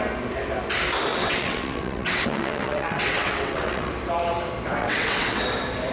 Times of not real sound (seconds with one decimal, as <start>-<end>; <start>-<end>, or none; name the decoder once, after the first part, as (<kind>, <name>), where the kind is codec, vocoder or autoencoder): 1.1-3.9 (vocoder, WaveNeXt); 4.8-5.4